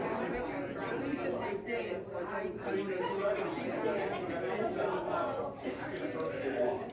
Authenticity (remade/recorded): recorded